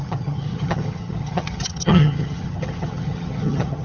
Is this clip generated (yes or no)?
yes